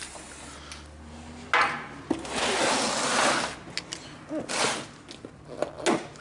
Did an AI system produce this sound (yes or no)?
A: no